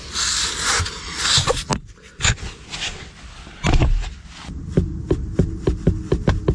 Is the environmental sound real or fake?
real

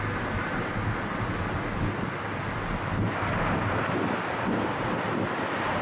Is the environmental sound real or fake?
real